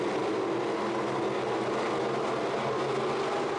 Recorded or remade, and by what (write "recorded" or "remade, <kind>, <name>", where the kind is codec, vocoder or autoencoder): recorded